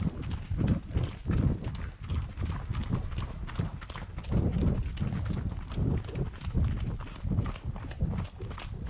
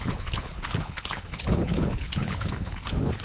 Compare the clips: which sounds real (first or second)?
first